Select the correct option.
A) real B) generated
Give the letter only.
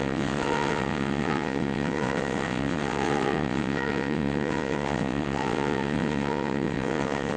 B